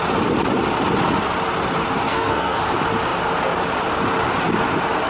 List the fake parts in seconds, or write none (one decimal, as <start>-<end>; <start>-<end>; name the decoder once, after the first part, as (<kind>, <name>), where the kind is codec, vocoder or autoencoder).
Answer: 2.1-2.6 (codec, SNAC)